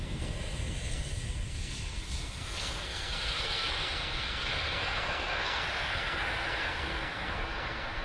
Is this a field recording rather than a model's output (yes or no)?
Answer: no